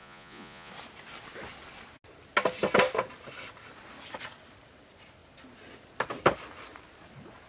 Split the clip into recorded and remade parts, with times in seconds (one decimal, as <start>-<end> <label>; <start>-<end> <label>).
0.0-0.7 remade; 0.7-7.5 recorded